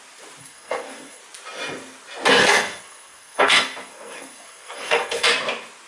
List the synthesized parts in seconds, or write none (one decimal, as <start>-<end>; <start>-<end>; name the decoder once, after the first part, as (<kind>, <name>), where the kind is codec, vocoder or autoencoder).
0.4-1.2 (codec, SNAC); 2.4-5.3